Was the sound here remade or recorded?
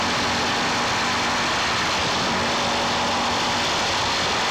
recorded